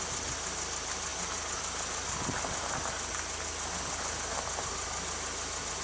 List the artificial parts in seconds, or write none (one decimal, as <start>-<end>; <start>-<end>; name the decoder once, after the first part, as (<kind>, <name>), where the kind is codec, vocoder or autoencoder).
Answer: none